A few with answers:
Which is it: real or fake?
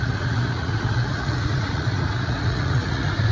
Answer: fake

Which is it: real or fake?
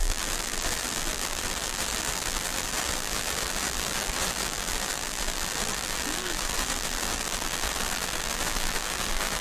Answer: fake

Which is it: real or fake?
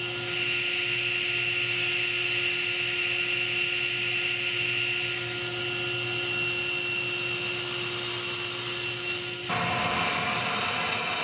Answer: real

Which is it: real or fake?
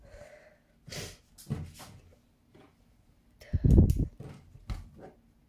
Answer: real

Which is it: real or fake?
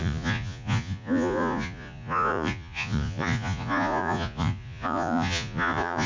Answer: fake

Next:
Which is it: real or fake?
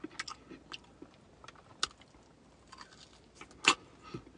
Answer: real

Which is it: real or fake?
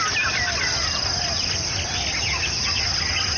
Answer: real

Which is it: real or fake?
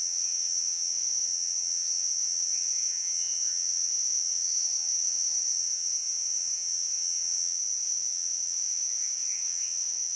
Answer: fake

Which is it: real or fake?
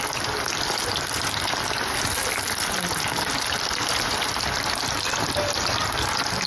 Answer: fake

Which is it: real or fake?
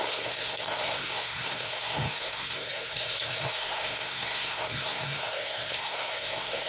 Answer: fake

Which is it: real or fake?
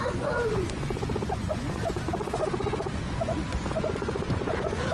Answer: fake